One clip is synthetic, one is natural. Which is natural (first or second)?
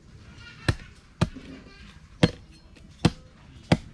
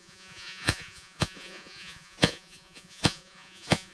first